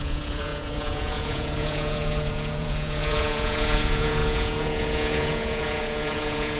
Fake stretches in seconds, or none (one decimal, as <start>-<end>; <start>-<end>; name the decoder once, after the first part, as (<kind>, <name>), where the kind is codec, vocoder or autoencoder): 0.0-6.6 (vocoder, Vocos)

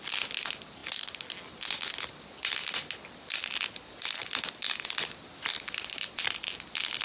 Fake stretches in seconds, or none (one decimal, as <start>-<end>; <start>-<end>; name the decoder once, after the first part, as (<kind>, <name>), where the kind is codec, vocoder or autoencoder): none

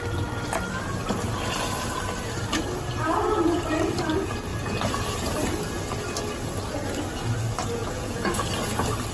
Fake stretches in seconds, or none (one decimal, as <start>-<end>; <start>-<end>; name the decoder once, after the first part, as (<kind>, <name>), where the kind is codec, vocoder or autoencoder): 7.8-8.5 (vocoder, Vocos)

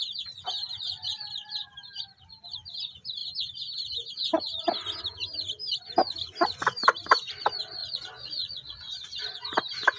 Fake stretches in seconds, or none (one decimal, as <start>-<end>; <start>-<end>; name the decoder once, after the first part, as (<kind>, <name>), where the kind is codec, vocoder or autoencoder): 7.8-9.1 (vocoder, Vocos)